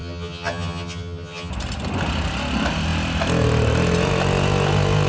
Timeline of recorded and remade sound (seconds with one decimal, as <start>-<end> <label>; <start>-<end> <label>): 0.0-1.5 remade; 1.5-5.1 recorded